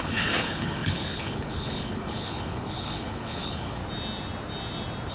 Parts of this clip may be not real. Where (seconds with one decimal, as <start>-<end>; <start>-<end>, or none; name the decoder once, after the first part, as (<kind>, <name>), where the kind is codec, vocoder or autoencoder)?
0.0-3.8 (codec, HILCodec)